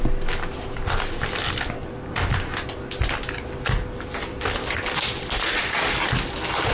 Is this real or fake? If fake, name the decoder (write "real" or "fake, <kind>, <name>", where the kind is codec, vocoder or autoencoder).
real